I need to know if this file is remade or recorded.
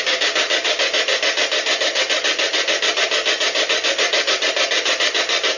recorded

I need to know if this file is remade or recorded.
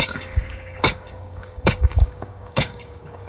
remade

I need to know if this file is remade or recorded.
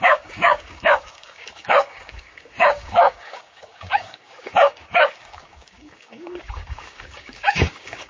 remade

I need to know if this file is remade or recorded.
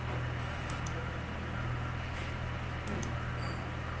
recorded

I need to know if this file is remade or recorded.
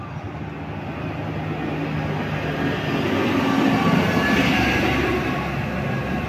recorded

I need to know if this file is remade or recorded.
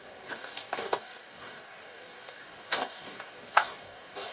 remade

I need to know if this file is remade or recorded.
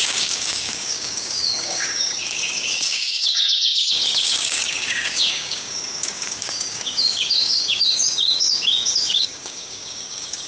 remade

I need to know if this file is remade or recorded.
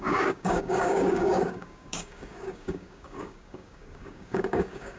remade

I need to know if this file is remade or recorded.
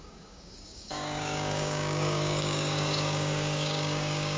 remade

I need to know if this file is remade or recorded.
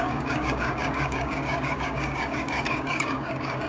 remade